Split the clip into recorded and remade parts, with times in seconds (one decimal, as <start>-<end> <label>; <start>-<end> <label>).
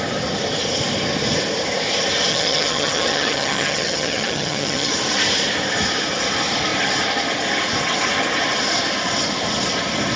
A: 0.0-2.3 recorded; 2.3-4.9 remade; 4.9-10.2 recorded